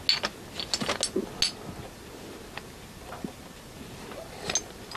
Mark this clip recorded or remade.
recorded